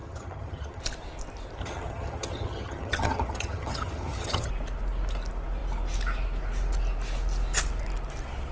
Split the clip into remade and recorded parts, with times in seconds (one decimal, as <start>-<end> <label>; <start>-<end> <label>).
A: 0.0-0.8 remade; 0.8-1.6 recorded; 1.6-4.5 remade; 4.5-8.5 recorded